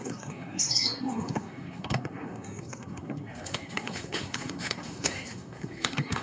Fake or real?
fake